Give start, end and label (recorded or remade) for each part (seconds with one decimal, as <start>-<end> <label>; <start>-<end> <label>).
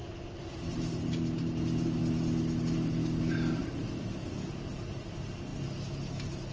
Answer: 0.0-6.5 recorded